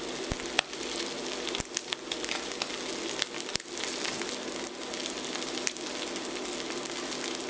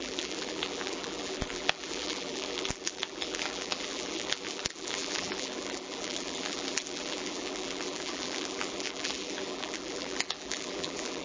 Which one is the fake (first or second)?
second